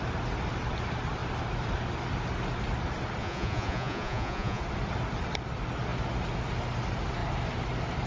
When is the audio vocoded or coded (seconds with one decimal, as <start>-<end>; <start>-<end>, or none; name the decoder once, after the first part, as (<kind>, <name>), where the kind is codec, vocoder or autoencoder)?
3.2-4.6 (vocoder, Vocos)